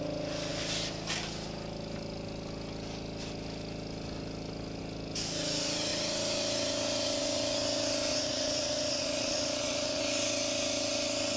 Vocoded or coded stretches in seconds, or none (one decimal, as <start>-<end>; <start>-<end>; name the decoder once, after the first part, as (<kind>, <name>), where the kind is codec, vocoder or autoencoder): 8.1-10.0 (vocoder, Vocos)